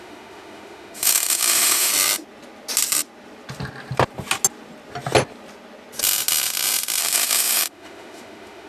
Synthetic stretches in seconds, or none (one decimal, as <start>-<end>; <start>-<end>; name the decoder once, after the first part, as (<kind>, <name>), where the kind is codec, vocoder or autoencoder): 0.0-1.9 (autoencoder, DAC-VAE); 7.0-8.7